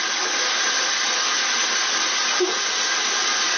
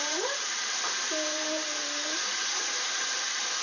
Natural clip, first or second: first